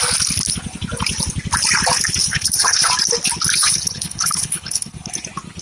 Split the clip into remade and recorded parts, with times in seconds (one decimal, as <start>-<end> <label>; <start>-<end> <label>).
0.0-2.2 recorded; 2.2-2.9 remade; 2.9-3.6 recorded; 3.6-5.1 remade; 5.1-5.6 recorded